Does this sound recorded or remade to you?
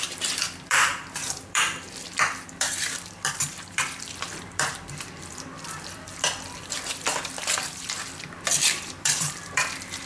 remade